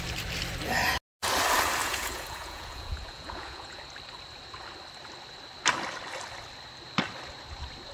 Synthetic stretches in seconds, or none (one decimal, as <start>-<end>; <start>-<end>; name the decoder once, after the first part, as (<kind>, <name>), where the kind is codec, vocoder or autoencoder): 1.8-3.8 (vocoder, Vocos)